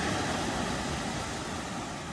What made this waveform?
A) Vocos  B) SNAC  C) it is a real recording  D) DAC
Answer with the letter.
C